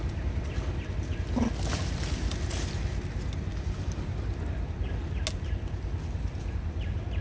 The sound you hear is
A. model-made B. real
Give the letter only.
B